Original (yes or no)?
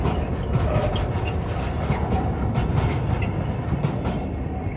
yes